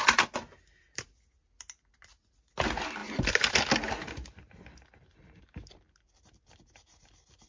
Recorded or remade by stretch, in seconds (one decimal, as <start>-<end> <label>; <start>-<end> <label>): 0.0-7.5 recorded

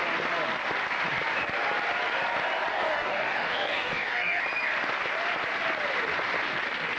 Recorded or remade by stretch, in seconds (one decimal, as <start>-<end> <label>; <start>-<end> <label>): 0.0-2.7 recorded; 2.7-4.4 remade; 4.4-7.0 recorded

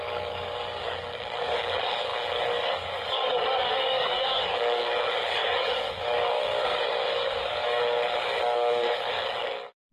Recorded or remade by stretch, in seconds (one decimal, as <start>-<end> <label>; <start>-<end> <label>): 0.0-9.9 remade